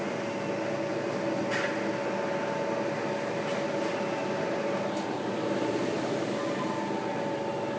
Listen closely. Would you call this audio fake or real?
real